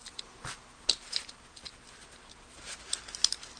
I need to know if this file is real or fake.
real